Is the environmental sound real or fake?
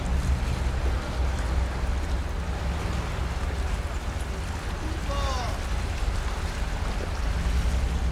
real